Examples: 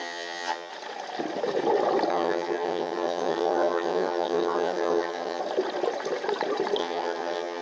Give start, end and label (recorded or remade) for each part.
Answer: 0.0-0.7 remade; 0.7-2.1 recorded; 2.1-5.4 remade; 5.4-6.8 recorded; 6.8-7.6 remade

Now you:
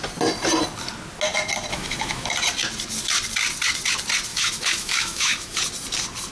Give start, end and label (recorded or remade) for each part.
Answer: 0.0-1.7 recorded; 1.7-2.3 remade; 2.3-4.3 recorded; 4.3-5.6 remade; 5.6-6.3 recorded